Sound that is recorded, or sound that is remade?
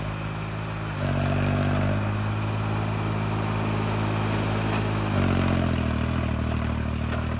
recorded